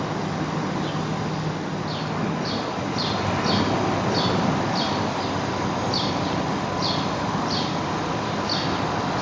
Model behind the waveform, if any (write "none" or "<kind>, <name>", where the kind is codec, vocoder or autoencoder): none